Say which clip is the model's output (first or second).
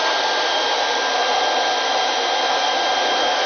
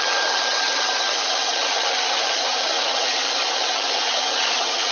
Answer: second